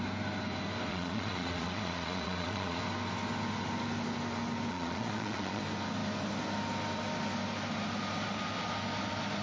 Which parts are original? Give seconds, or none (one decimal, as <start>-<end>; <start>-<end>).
0.0-0.9; 2.8-4.7; 5.6-9.4